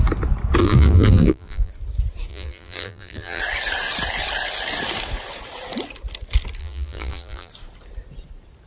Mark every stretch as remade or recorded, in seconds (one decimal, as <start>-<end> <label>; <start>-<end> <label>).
0.0-0.6 recorded; 0.6-1.7 remade; 1.7-2.3 recorded; 2.3-3.4 remade; 3.4-6.6 recorded; 6.6-7.5 remade; 7.5-8.7 recorded